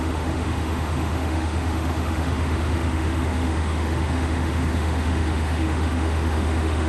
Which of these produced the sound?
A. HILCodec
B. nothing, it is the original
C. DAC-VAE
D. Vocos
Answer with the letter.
C